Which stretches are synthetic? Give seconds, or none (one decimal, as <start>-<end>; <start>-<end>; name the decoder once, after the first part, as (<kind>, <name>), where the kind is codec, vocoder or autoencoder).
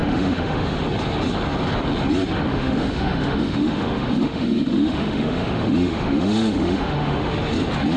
0.0-0.8 (autoencoder, DAC-VAE); 2.5-7.3